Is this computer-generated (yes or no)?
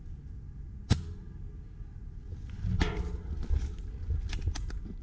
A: no